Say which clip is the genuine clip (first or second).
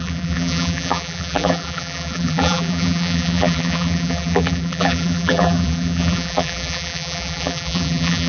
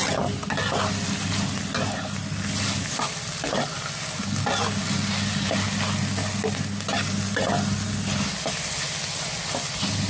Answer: second